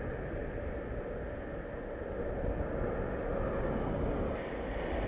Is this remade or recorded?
recorded